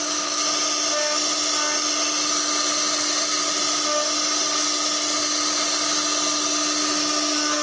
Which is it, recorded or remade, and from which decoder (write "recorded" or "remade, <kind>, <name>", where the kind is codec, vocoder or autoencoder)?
recorded